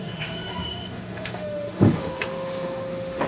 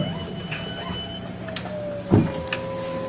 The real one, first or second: second